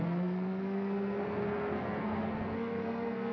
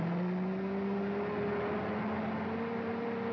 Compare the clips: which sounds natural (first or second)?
second